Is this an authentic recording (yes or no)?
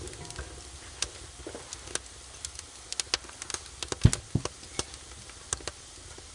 yes